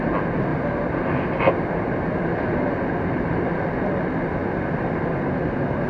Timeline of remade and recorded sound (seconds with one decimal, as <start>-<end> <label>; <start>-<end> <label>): 0.0-5.9 recorded